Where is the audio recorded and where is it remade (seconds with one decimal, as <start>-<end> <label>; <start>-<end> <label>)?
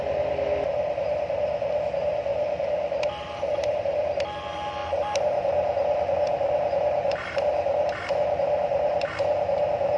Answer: 0.0-2.3 recorded; 2.3-3.8 remade; 3.8-4.8 recorded; 4.8-7.9 remade; 7.9-10.0 recorded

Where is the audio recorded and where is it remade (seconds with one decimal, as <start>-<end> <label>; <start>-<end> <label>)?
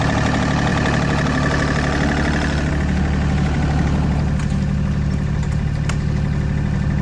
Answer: 0.0-7.0 recorded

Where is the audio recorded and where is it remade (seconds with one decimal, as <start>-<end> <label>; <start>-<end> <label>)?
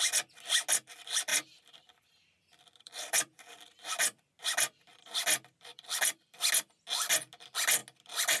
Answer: 0.0-1.3 recorded; 1.3-4.4 remade; 4.4-5.7 recorded; 5.7-6.5 remade; 6.5-8.4 recorded